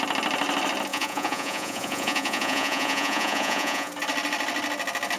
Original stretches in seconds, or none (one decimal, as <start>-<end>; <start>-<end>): 0.0-0.9; 3.9-5.2